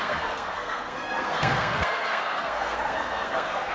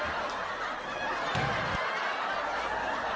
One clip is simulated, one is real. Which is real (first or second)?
second